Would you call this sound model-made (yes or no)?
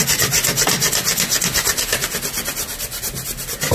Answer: no